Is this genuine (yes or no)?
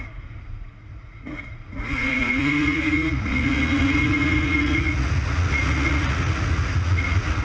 no